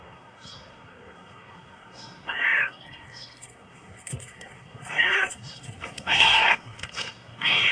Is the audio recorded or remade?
remade